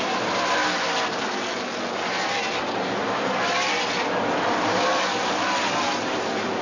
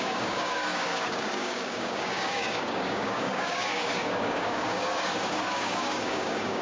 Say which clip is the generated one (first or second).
second